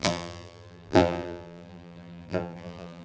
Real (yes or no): no